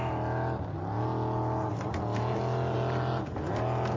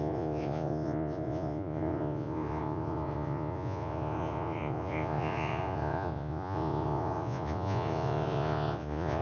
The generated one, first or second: second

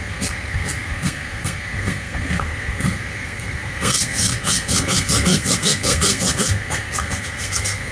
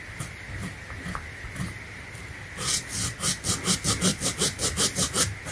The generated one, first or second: first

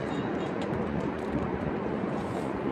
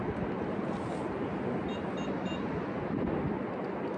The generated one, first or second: first